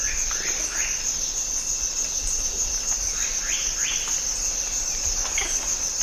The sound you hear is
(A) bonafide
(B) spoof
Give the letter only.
A